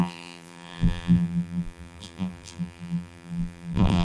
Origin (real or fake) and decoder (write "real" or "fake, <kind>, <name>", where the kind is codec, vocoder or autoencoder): fake, vocoder, BigVGAN v2